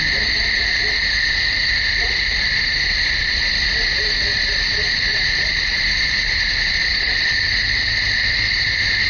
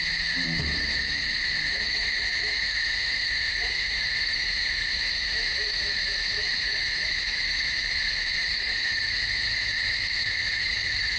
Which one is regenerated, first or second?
second